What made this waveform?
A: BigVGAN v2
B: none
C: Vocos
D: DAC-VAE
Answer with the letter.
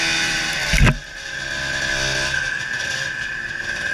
B